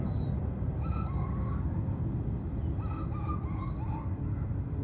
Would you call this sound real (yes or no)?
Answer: yes